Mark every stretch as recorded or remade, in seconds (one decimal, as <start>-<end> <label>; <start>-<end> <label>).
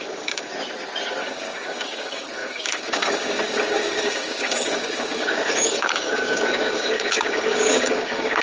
0.0-0.5 remade; 0.5-1.2 recorded; 1.2-8.4 remade